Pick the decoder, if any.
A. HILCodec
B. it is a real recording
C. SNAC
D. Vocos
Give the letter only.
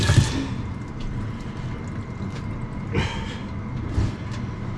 B